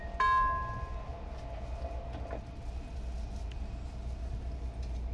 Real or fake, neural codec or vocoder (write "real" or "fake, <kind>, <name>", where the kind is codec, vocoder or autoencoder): real